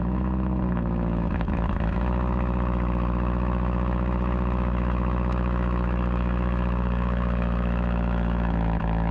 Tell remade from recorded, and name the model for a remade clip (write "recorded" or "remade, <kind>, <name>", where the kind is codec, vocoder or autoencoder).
remade, autoencoder, DAC-VAE